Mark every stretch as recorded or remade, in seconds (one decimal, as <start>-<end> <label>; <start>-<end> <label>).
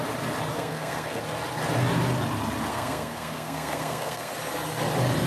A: 0.0-0.5 recorded; 0.5-1.2 remade; 1.2-2.7 recorded; 2.7-4.3 remade; 4.3-5.3 recorded